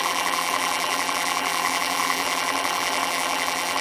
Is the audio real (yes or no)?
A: no